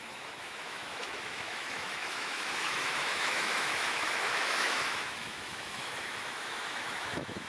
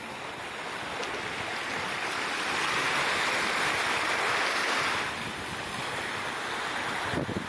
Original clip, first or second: second